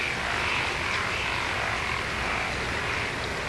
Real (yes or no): yes